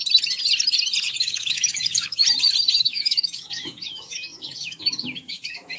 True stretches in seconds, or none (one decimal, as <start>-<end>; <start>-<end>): 0.0-1.0; 2.2-2.8